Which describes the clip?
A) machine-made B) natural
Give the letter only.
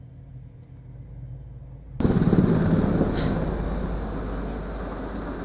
B